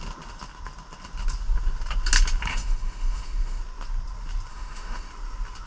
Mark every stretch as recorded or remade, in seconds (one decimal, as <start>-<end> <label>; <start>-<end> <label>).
0.0-2.5 recorded; 2.5-3.6 remade; 3.6-4.5 recorded; 4.5-5.1 remade; 5.1-5.7 recorded